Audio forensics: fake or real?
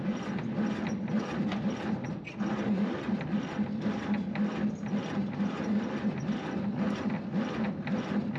real